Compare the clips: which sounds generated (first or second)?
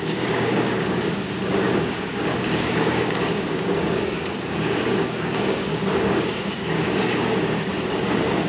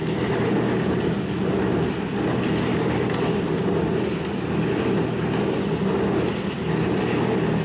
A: first